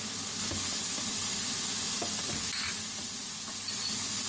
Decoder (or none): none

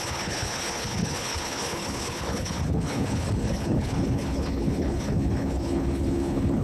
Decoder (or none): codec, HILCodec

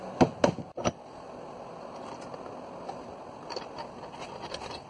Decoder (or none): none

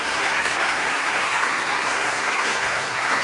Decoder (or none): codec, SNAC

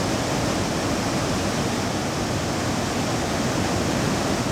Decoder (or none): none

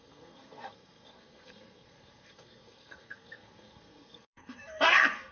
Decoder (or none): codec, SNAC